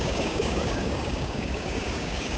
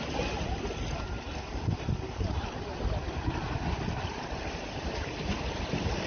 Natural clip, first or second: second